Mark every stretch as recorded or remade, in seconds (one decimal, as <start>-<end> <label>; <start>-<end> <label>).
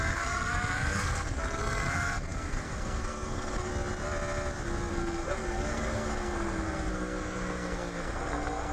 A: 0.0-3.7 remade; 3.7-4.9 recorded; 4.9-8.7 remade